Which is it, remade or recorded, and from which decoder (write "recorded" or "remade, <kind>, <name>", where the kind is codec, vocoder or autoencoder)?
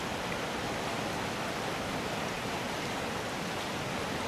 recorded